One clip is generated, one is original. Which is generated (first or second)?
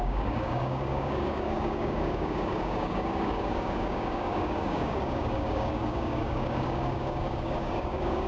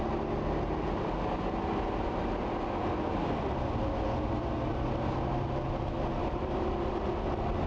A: first